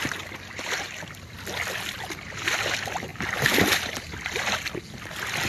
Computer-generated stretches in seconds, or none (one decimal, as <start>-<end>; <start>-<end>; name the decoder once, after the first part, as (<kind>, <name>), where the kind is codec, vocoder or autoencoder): none